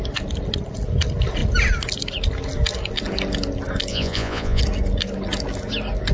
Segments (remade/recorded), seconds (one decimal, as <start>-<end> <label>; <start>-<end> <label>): 0.0-3.9 recorded; 3.9-4.6 remade; 4.6-6.1 recorded